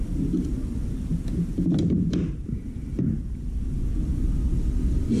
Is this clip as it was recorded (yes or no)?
yes